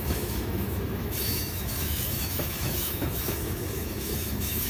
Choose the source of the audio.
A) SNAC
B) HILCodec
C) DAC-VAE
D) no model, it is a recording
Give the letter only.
C